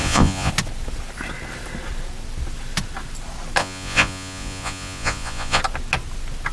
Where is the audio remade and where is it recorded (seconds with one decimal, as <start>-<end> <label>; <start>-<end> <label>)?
0.0-0.5 remade; 0.5-3.6 recorded; 3.6-5.6 remade; 5.6-6.5 recorded